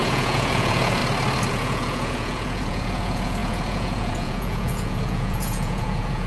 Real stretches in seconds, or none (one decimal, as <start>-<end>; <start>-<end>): 1.0-1.5

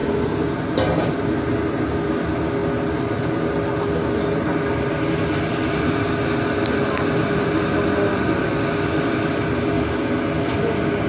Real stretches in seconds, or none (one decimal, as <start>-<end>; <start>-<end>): 0.0-11.1